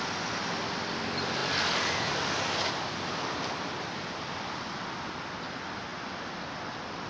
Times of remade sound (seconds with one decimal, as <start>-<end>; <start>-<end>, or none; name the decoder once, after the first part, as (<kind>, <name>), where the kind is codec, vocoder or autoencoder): none